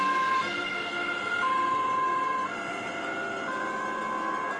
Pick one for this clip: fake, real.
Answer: real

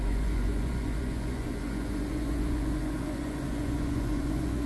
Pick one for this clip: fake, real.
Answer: fake